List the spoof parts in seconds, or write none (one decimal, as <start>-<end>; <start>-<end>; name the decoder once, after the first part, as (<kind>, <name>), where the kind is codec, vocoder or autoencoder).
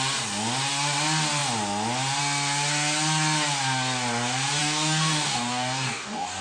4.6-6.4 (codec, DAC)